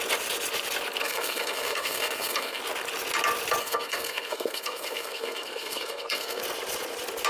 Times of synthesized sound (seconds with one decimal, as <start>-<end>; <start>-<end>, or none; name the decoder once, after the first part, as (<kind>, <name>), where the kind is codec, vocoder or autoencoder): 1.0-2.6 (codec, SNAC); 3.6-6.4